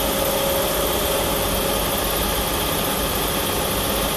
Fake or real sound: real